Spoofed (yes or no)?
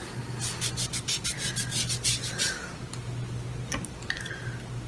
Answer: no